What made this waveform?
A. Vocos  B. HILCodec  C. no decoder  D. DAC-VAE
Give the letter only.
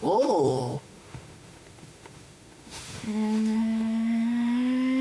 D